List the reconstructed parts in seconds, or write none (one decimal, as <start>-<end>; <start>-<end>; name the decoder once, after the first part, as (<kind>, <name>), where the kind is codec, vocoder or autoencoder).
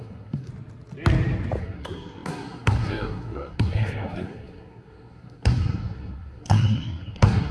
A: 0.0-0.5 (codec, SNAC); 1.6-7.5